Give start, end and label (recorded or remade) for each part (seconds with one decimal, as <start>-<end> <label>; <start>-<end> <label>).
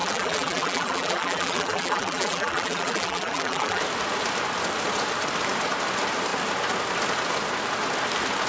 0.0-3.8 remade; 3.8-8.5 recorded